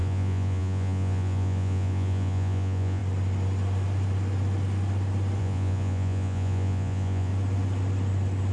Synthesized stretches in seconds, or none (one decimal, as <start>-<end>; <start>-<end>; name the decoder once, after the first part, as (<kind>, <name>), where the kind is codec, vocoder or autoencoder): 0.0-3.0 (vocoder, Vocos); 5.4-7.3